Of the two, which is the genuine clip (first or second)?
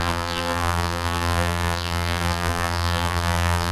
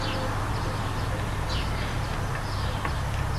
second